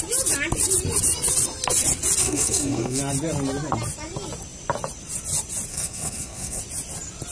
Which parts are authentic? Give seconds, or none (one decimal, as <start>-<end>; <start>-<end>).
0.0-2.2; 3.0-5.7; 6.6-7.3